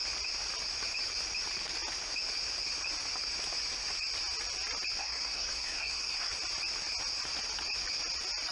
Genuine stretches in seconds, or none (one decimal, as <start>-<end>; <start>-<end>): 0.0-5.0; 6.3-8.5